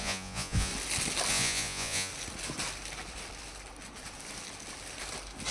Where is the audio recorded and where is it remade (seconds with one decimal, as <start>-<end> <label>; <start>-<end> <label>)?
0.0-0.7 remade; 0.7-1.3 recorded; 1.3-2.1 remade; 2.1-5.5 recorded